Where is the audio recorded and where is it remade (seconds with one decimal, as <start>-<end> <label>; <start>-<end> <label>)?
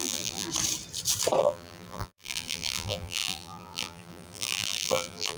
0.0-0.5 remade; 0.5-1.4 recorded; 1.4-5.4 remade